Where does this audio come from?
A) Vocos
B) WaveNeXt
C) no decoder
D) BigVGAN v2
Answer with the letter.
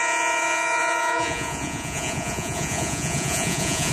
A